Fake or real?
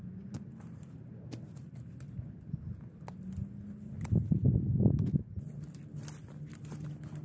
real